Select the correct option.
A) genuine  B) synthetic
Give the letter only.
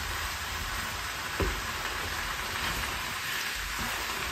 B